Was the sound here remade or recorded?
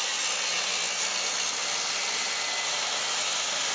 recorded